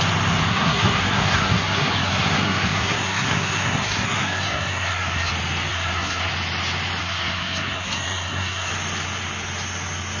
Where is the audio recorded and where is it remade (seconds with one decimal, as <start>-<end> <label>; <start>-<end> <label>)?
0.0-0.5 recorded; 0.5-5.3 remade; 5.3-5.7 recorded; 5.7-6.3 remade; 6.3-7.0 recorded; 7.0-8.7 remade; 8.7-10.2 recorded